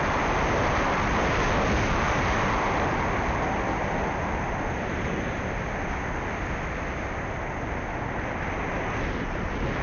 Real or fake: real